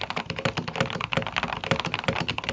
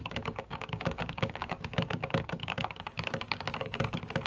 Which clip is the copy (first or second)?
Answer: second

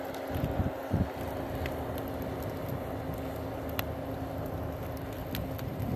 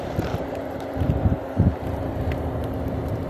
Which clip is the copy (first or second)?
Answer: second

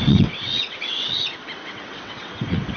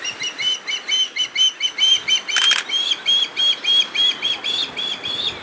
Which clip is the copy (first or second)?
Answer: first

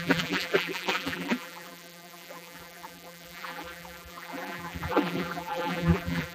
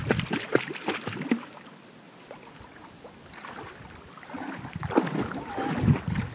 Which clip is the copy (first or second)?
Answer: first